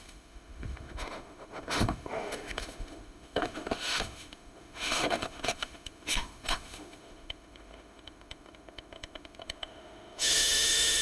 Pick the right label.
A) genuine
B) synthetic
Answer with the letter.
B